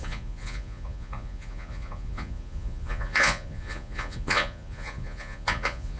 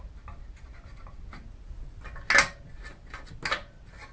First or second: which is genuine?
second